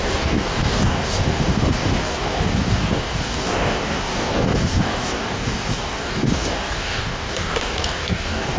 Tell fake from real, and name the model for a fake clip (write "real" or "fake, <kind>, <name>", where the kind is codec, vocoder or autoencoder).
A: fake, codec, DAC